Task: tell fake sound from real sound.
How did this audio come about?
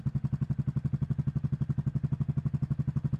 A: real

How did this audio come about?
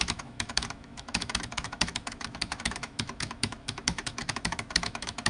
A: fake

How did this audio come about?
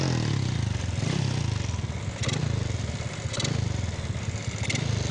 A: real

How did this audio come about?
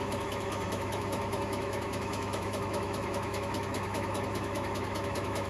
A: fake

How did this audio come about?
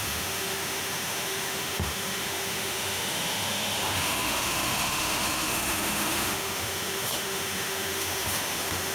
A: fake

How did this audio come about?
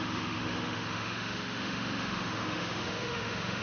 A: fake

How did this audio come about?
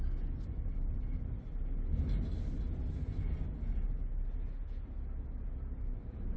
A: real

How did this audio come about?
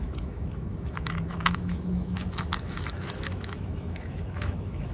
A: fake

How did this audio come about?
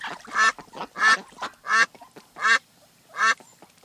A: real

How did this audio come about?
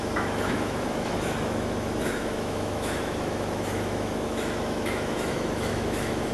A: fake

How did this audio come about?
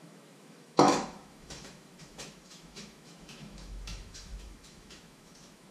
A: fake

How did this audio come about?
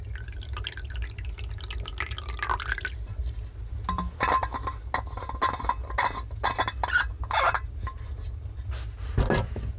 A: real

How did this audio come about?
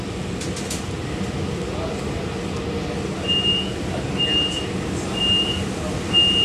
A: real